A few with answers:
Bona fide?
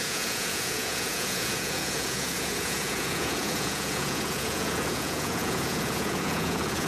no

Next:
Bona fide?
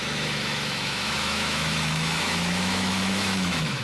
no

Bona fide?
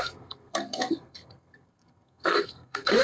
no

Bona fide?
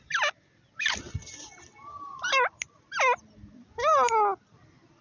yes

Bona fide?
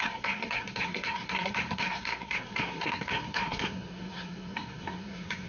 no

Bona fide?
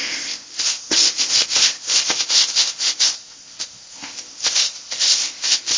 no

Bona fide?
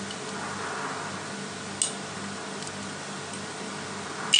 yes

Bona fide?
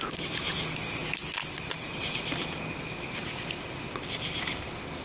yes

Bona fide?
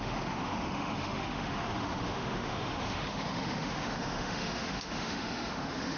no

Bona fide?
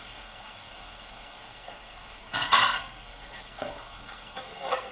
no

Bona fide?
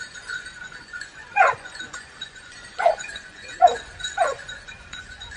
no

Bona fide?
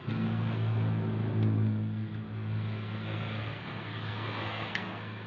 no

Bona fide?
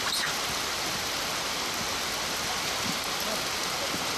yes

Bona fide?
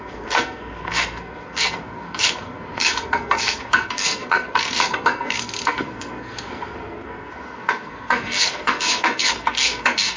no